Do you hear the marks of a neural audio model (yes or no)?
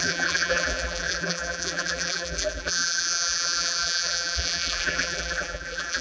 yes